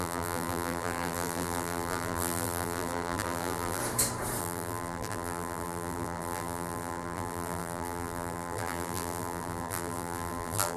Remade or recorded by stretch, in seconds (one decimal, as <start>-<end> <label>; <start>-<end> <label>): 0.0-3.8 remade; 3.8-4.4 recorded; 4.4-10.8 remade